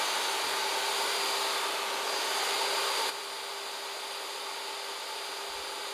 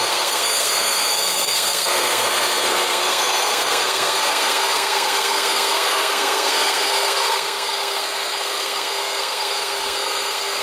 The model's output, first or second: second